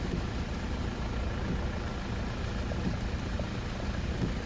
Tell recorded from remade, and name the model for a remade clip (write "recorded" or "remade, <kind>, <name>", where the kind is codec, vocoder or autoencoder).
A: remade, vocoder, BigVGAN v2